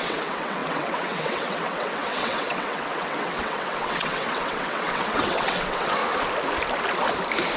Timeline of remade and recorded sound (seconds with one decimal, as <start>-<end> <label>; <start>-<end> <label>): 0.0-6.0 remade; 6.0-7.6 recorded